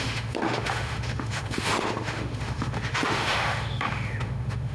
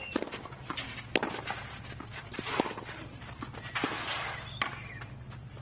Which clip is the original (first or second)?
second